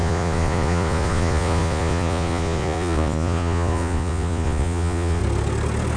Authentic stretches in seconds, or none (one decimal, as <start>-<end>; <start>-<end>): 5.2-6.0